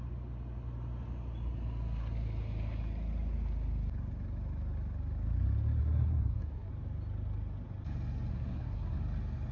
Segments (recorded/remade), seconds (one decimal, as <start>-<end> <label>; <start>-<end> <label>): 0.0-5.8 recorded; 5.8-6.7 remade; 6.7-8.3 recorded; 8.3-9.0 remade; 9.0-9.5 recorded